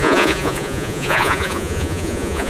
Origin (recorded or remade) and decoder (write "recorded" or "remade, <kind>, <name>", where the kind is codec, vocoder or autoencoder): remade, vocoder, Vocos